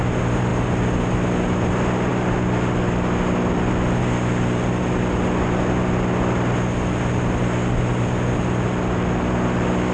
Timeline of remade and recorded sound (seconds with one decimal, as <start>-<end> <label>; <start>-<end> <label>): 0.0-9.9 recorded